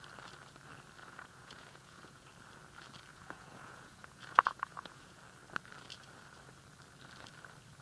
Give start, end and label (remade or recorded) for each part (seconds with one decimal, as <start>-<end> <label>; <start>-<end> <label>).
0.0-1.0 recorded; 1.0-2.3 remade; 2.3-3.1 recorded; 3.1-5.2 remade; 5.2-7.8 recorded